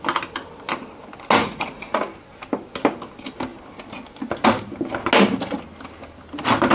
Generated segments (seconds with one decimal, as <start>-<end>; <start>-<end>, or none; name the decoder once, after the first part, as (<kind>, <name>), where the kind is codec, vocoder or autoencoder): 1.4-2.0 (vocoder, Vocos)